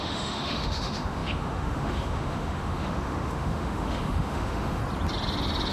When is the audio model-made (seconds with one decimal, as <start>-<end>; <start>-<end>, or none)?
0.0-4.8